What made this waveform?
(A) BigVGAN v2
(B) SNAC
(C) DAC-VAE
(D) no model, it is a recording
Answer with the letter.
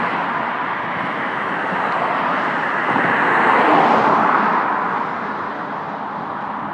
D